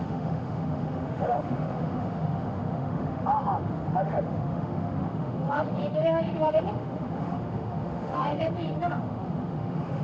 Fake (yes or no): yes